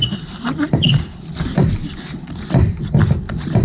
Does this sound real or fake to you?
fake